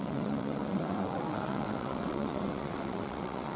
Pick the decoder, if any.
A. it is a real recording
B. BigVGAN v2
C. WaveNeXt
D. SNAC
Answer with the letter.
C